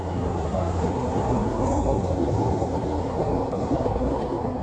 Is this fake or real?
fake